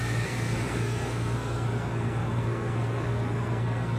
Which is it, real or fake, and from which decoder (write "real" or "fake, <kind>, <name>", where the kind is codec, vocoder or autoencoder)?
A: fake, codec, SNAC